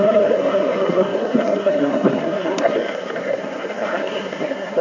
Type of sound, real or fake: fake